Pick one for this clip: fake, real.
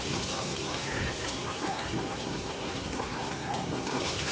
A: fake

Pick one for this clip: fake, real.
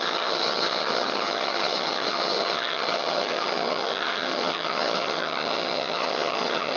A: fake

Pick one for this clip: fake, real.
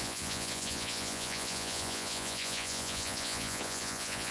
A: fake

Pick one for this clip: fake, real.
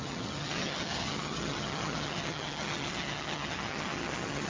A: fake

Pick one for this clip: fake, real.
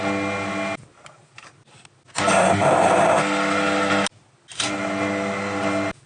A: real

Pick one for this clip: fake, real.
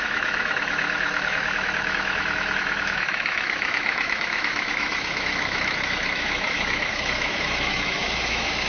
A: fake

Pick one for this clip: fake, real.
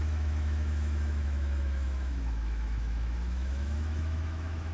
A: fake